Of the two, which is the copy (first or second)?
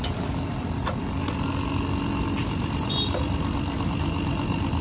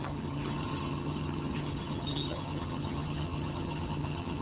second